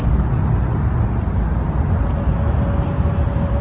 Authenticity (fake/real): real